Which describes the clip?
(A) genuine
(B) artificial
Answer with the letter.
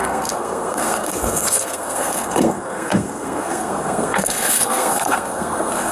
B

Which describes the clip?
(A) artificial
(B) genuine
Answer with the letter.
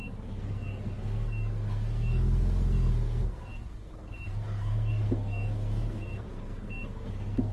A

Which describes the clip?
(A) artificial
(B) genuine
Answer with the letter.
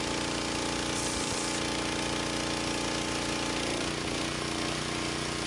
B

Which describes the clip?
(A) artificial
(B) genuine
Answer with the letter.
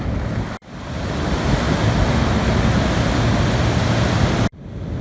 B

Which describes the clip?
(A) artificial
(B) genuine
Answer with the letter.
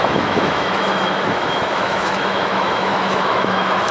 A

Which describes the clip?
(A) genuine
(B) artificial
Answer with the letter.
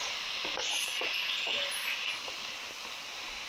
A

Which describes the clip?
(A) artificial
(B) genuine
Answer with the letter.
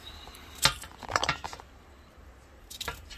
A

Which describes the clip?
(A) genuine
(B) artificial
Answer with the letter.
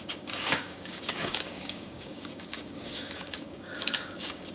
B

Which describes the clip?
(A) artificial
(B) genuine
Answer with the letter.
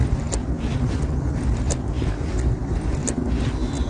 B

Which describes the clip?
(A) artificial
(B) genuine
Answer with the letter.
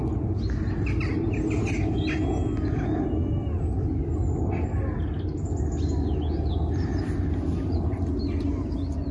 B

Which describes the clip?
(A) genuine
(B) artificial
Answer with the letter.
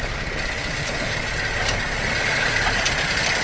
A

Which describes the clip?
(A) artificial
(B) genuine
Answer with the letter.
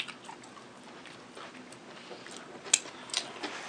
B